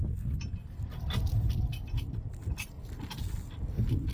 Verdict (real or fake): real